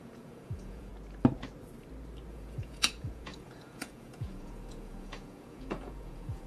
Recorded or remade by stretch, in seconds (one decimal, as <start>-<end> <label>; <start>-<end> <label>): 0.0-0.9 remade; 0.9-2.3 recorded; 2.3-6.5 remade